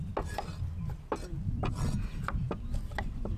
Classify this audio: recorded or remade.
recorded